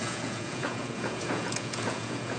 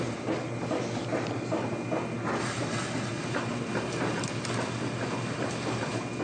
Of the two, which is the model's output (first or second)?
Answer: first